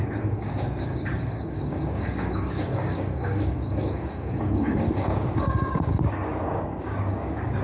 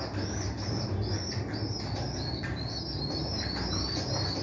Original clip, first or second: second